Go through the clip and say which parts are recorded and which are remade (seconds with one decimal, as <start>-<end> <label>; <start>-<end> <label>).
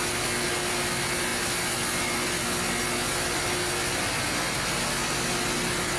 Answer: 0.0-6.0 recorded